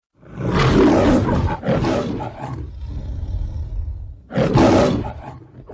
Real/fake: real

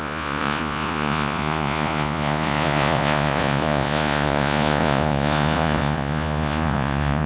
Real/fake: fake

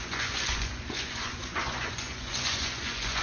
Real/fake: fake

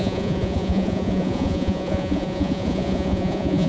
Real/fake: fake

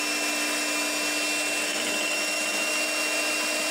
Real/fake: real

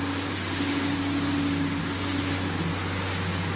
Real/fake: real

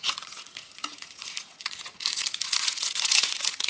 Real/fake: fake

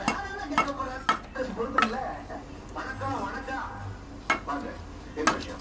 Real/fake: real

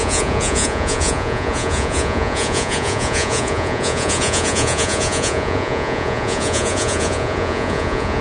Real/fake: fake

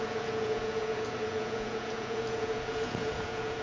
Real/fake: fake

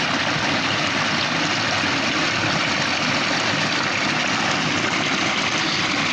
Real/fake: real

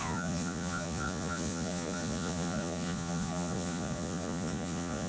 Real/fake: fake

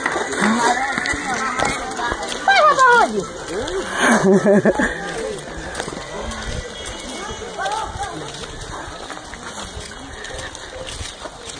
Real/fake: real